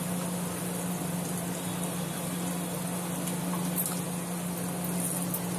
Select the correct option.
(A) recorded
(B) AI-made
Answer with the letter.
A